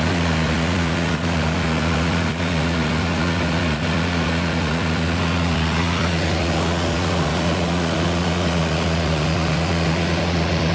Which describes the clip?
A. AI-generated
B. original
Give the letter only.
A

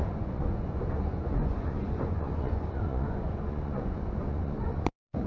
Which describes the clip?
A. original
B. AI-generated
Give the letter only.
B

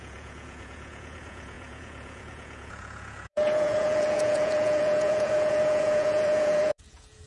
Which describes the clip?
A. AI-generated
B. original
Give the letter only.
A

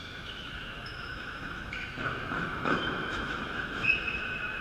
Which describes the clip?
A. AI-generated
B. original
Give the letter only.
A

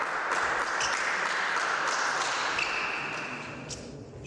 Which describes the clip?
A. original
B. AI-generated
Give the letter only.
A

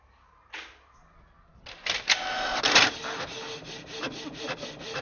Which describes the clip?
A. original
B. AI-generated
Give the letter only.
A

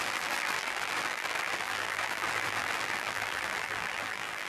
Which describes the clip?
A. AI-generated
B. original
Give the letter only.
A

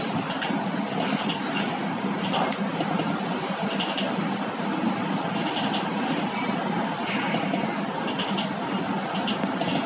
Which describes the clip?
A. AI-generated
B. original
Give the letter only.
B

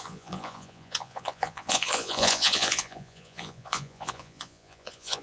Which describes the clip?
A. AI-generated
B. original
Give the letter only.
A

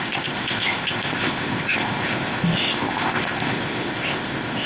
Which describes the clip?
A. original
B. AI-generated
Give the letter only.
B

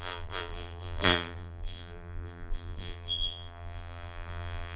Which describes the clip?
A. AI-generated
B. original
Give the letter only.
A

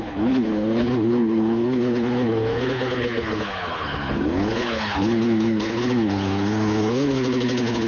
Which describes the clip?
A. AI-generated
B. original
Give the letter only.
A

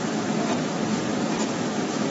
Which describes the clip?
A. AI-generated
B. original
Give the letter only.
B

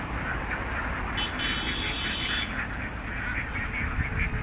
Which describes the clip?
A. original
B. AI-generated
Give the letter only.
A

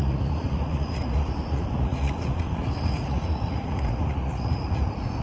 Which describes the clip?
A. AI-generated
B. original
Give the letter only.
A